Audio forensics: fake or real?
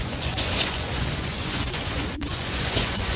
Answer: fake